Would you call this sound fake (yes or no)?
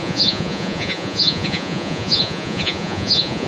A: yes